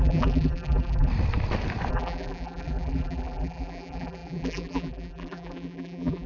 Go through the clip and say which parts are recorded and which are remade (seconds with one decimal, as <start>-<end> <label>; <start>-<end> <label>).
0.0-1.1 remade; 1.1-1.9 recorded; 1.9-6.3 remade